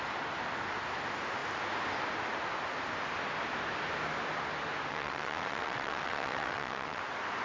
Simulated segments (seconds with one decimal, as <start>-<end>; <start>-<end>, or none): 4.9-7.0